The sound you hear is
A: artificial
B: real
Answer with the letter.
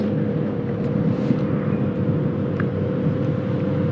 B